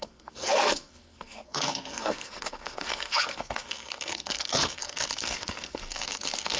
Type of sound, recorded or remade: remade